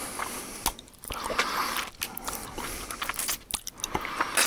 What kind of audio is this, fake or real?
real